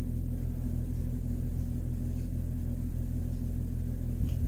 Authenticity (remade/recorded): recorded